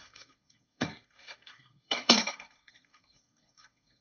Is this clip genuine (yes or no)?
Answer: no